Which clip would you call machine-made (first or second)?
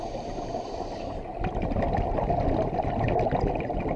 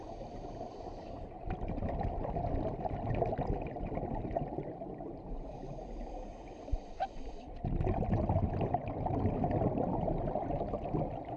second